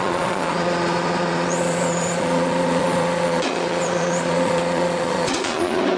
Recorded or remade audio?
remade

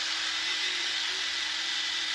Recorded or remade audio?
recorded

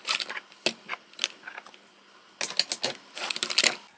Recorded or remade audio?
recorded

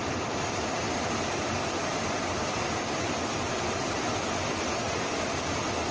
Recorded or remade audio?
recorded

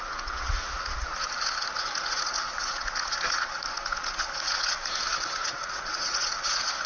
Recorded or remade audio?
remade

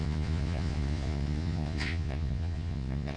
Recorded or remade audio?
remade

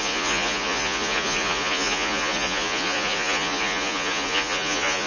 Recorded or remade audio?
remade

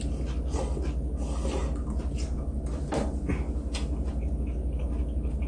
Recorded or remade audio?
recorded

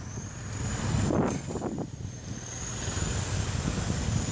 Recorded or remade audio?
recorded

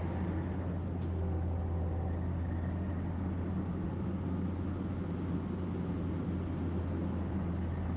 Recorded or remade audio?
recorded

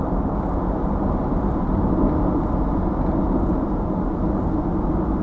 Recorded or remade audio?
recorded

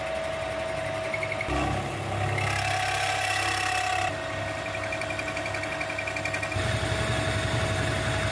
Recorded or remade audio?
recorded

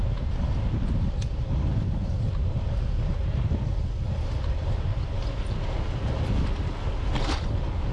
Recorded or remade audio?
recorded